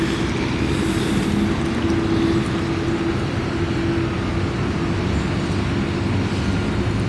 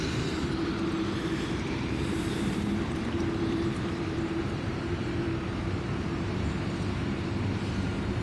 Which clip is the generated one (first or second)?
second